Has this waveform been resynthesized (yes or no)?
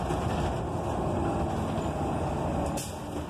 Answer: no